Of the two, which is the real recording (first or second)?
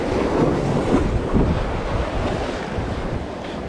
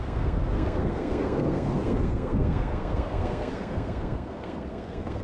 first